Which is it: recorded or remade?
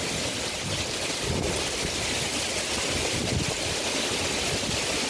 recorded